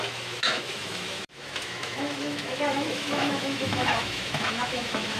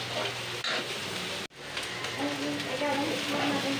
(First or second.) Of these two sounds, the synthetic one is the first